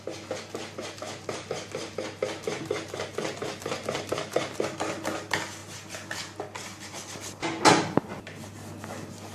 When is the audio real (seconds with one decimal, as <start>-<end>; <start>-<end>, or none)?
0.0-9.3

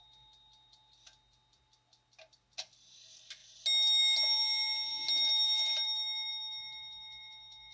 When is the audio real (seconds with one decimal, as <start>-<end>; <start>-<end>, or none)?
0.0-7.7